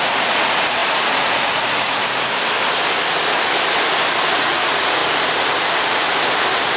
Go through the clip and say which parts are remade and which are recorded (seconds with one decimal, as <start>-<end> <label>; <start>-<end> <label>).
0.0-2.0 remade; 2.0-4.3 recorded; 4.3-5.0 remade; 5.0-6.8 recorded